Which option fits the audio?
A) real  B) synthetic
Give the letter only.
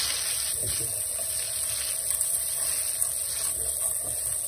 A